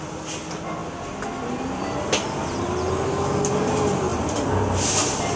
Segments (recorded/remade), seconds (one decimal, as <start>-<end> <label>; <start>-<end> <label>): 0.0-5.4 recorded